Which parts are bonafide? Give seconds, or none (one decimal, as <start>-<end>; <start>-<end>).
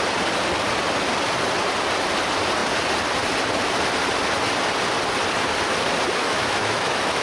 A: 0.0-6.2